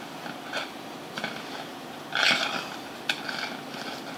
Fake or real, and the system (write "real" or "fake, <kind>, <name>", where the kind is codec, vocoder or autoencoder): real